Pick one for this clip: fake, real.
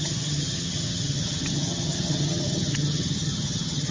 fake